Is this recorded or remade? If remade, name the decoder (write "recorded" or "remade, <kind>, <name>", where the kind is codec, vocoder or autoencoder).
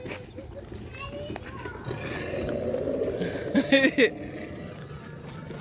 recorded